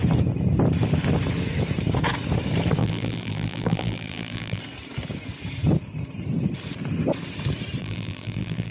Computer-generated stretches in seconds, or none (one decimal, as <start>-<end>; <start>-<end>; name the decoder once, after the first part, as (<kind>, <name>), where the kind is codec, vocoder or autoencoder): 2.8-4.6 (vocoder, BigVGAN v2); 7.8-8.7